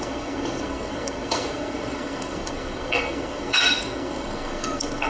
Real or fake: fake